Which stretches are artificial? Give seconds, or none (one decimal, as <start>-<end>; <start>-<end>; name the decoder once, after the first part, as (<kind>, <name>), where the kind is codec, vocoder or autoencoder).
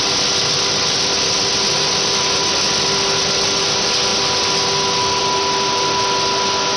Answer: none